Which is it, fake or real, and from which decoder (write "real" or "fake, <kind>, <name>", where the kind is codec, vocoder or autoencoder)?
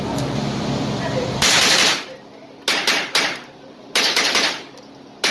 real